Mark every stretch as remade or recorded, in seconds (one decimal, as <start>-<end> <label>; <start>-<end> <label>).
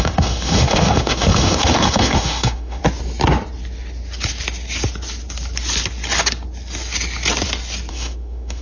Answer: 0.0-2.8 remade; 2.8-7.9 recorded; 7.9-8.6 remade